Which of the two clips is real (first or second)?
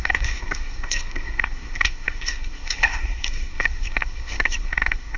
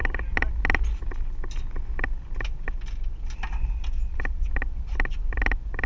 second